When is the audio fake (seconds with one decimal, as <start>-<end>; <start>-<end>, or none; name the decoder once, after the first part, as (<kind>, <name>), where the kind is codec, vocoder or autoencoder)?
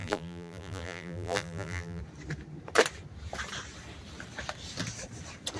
0.0-2.0 (vocoder, BigVGAN v2)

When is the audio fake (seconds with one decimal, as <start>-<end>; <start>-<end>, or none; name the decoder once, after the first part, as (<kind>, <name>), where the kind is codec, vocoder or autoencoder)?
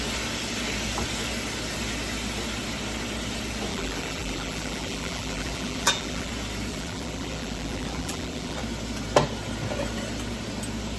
3.7-6.3 (vocoder, BigVGAN v2); 6.7-8.6